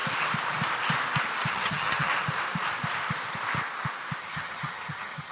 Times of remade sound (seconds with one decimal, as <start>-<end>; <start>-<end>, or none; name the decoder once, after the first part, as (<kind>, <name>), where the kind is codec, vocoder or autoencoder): 1.5-2.1 (vocoder, HiFi-GAN); 4.2-5.3